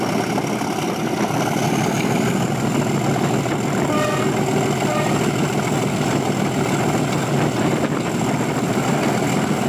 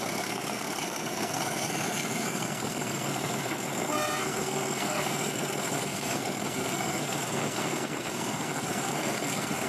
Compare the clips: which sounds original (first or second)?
first